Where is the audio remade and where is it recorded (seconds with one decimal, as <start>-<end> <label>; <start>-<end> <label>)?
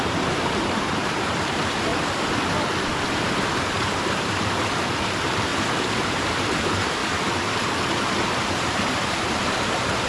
0.0-1.9 remade; 1.9-3.1 recorded; 3.1-5.5 remade; 5.5-6.0 recorded; 6.0-7.0 remade; 7.0-8.4 recorded; 8.4-10.1 remade